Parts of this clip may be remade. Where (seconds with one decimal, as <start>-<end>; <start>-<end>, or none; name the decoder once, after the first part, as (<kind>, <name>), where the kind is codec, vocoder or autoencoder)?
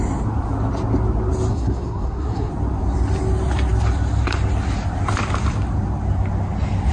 1.5-2.5 (codec, SNAC)